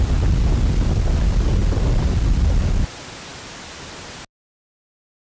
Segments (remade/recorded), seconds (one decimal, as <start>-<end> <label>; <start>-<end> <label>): 0.0-5.3 recorded